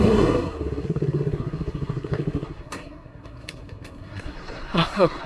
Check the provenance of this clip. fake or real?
fake